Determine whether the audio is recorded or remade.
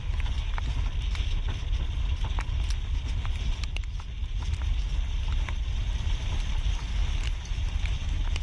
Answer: recorded